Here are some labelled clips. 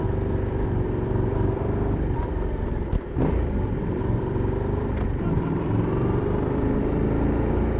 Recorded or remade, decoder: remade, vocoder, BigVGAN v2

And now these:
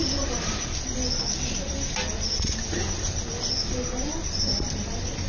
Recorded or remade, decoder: recorded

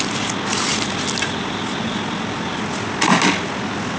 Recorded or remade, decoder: recorded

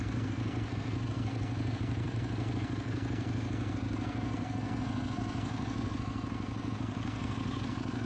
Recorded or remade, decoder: remade, codec, SNAC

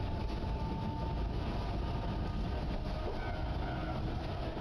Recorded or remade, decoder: recorded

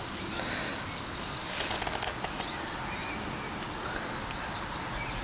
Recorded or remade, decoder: recorded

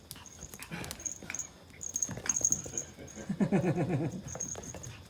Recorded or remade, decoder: recorded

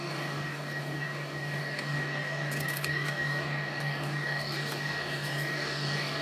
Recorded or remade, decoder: remade, codec, DAC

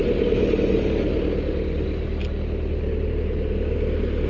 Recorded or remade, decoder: recorded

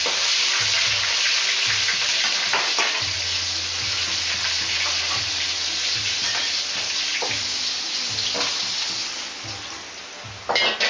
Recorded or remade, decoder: recorded